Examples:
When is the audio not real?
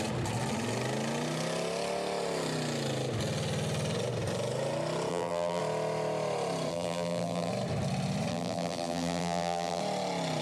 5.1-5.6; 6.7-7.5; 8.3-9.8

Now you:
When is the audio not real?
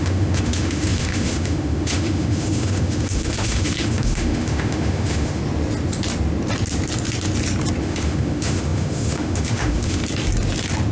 0.0-5.4; 7.8-10.0